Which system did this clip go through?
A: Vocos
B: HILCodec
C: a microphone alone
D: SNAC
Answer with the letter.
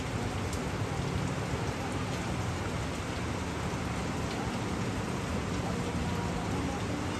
C